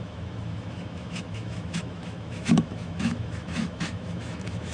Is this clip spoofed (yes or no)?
yes